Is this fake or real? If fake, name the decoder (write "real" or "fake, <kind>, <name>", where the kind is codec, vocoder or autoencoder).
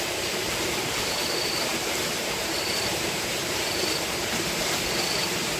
fake, vocoder, BigVGAN v2